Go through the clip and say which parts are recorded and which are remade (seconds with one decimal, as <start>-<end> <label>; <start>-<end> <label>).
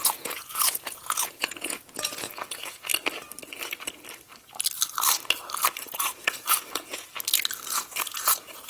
0.0-2.9 remade; 2.9-5.8 recorded; 5.8-7.1 remade; 7.1-7.8 recorded; 7.8-8.7 remade